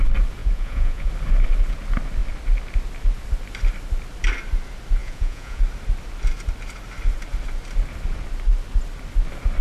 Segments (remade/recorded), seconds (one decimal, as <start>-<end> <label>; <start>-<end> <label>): 0.0-0.4 recorded; 0.4-1.1 remade; 1.1-5.0 recorded; 5.0-5.6 remade; 5.6-9.6 recorded